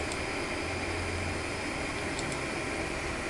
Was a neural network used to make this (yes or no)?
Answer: no